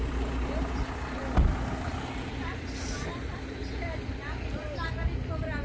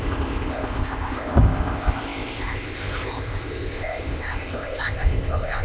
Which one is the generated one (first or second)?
second